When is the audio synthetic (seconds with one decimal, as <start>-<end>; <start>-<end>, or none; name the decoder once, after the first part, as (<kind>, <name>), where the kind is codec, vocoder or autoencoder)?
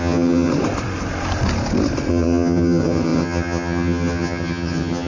0.0-0.5 (vocoder, HiFi-GAN); 2.1-5.1